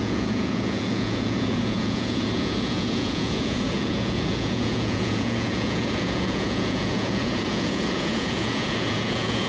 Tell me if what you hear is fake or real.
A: fake